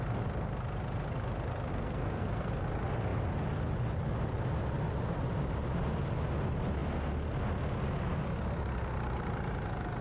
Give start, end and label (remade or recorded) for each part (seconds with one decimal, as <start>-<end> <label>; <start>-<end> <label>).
0.0-1.7 recorded; 1.7-2.5 remade; 2.5-10.0 recorded